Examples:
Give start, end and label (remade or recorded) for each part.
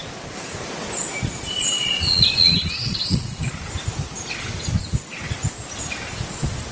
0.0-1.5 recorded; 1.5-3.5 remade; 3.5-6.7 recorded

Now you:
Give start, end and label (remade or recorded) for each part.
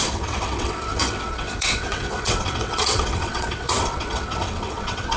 0.0-5.2 remade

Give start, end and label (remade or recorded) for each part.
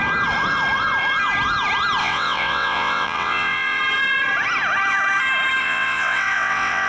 0.0-2.0 recorded; 2.0-3.8 remade; 3.8-5.6 recorded; 5.6-6.9 remade